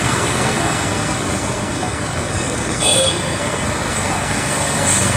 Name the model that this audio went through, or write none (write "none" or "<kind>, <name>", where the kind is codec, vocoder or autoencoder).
codec, SNAC